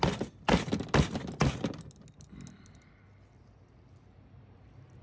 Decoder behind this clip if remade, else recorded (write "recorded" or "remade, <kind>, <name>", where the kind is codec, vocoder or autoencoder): recorded